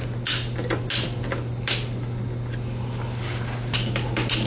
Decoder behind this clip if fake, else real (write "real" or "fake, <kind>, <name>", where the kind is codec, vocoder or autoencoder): real